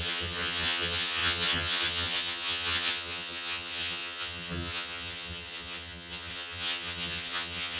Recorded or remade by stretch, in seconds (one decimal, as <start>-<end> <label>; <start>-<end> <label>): 0.0-7.8 remade